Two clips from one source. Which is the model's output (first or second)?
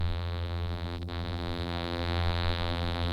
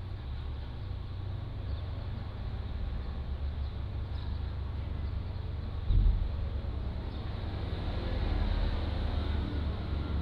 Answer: first